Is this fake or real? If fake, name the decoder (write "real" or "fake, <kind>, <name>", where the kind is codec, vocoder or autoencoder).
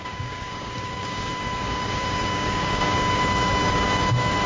fake, codec, DAC